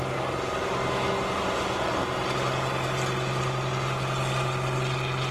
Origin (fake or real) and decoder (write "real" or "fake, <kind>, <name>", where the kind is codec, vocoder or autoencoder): real